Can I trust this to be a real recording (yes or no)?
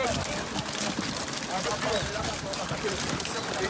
yes